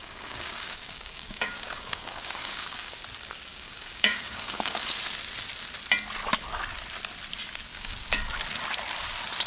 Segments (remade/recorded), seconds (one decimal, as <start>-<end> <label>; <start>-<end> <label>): 0.0-3.0 remade; 3.0-3.5 recorded; 3.5-5.0 remade; 5.0-7.7 recorded; 7.7-8.2 remade; 8.2-9.5 recorded